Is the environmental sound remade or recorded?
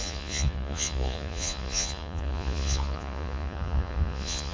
remade